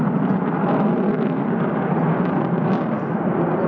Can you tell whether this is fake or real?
fake